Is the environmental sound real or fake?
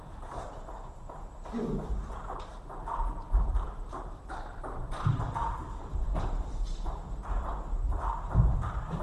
fake